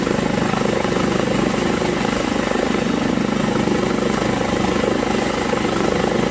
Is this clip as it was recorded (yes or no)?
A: no